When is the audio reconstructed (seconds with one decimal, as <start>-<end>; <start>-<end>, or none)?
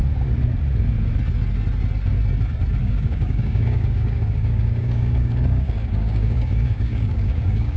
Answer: 2.8-7.8